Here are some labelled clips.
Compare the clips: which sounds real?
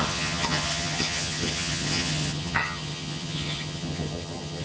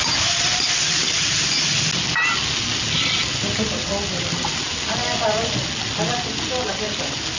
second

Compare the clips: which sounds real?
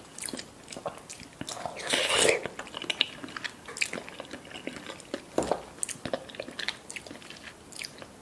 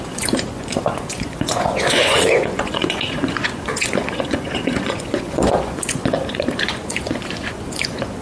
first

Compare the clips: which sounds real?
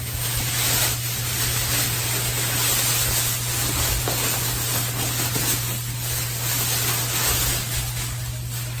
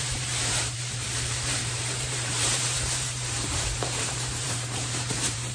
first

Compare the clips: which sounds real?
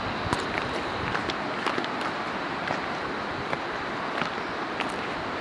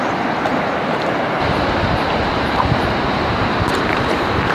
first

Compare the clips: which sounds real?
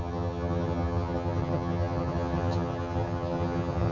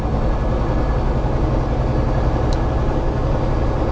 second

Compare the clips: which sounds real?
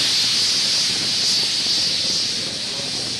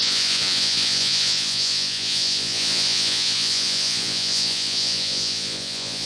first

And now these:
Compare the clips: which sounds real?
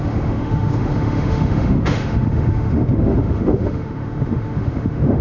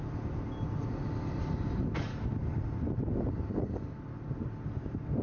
second